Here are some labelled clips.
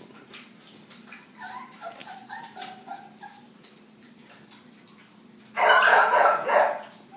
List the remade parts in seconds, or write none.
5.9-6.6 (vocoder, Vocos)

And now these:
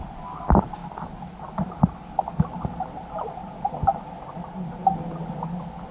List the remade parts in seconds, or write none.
none

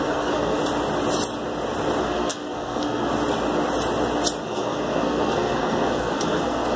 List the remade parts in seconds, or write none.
0.0-0.6 (codec, SNAC); 2.0-3.1; 4.4-6.8

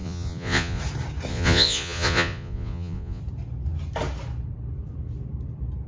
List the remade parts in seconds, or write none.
0.0-0.8 (vocoder, Vocos); 1.3-3.2

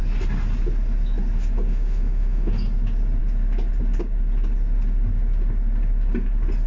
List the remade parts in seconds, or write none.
1.7-2.5 (autoencoder, DAC-VAE)

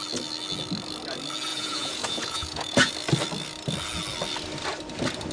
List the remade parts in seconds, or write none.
1.5-2.9 (vocoder, Vocos)

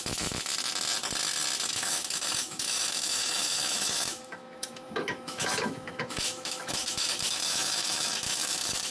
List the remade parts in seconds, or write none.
0.0-0.5 (autoencoder, DAC-VAE); 1.6-8.9

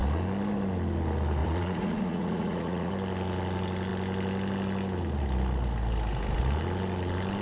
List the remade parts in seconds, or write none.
1.4-2.9 (vocoder, Vocos)